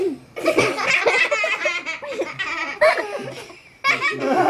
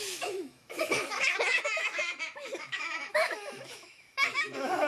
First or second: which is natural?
first